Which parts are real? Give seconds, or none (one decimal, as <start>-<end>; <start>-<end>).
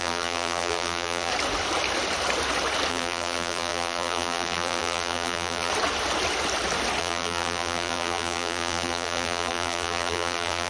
1.3-2.9; 5.7-7.0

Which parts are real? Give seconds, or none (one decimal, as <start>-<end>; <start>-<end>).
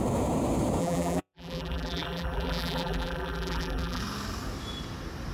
0.0-0.8; 4.0-5.3